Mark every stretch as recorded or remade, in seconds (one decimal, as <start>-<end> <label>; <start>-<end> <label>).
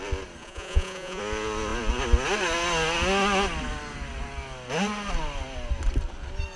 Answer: 0.0-0.4 recorded; 0.4-1.2 remade; 1.2-6.6 recorded